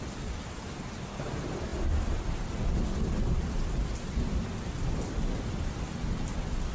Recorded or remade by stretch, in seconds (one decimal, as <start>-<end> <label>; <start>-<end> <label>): 0.0-6.7 recorded